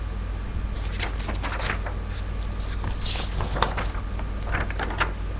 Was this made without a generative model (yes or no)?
yes